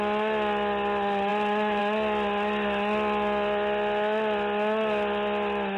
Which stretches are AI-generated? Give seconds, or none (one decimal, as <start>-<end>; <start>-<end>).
none